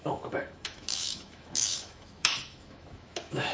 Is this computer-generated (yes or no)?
yes